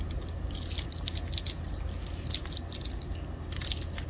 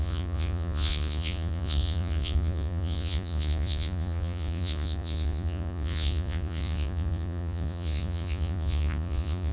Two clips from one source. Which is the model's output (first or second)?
second